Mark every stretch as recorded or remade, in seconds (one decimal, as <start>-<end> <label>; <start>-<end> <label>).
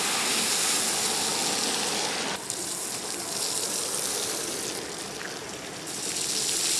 0.0-6.8 recorded